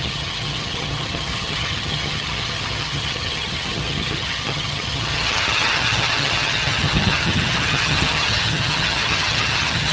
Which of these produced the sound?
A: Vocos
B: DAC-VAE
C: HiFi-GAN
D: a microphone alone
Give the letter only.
C